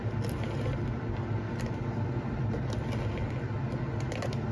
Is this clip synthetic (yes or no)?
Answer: no